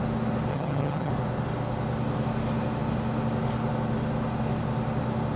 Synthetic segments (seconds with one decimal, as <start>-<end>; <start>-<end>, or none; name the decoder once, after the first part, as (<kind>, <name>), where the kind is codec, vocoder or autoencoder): 0.5-1.1 (vocoder, HiFi-GAN)